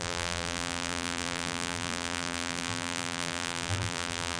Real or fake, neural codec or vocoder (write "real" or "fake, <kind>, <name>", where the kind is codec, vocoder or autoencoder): fake, vocoder, BigVGAN v2